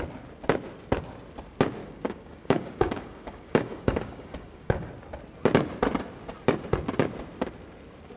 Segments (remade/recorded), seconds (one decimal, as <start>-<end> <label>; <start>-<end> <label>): 0.0-1.8 recorded; 1.8-4.9 remade; 4.9-8.2 recorded